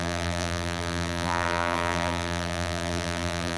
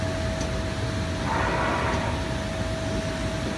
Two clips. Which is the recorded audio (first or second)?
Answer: second